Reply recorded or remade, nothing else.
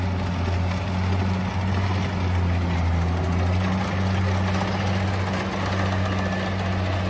recorded